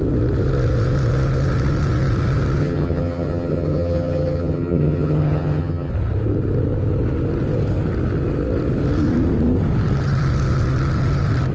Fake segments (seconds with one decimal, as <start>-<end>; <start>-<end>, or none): 2.6-5.9